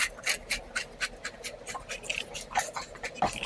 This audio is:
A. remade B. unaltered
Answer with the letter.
B